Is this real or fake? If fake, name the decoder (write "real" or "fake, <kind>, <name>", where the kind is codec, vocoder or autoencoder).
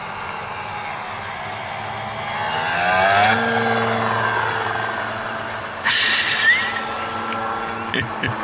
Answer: real